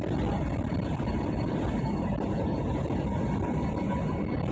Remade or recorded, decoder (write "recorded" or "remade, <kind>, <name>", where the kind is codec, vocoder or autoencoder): remade, vocoder, BigVGAN v2